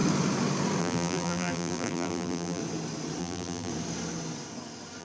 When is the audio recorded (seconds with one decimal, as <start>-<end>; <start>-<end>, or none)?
0.0-0.8; 2.6-3.2; 3.7-5.0